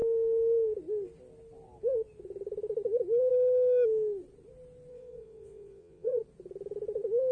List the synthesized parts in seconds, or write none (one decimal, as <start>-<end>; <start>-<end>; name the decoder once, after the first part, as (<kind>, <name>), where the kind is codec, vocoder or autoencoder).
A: 4.9-6.2 (vocoder, Vocos)